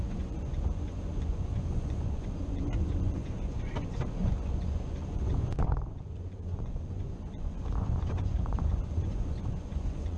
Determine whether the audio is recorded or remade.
remade